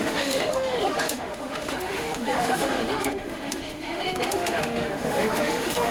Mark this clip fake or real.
fake